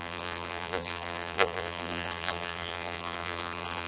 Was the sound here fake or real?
fake